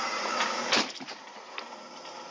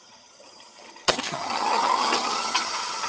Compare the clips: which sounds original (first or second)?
first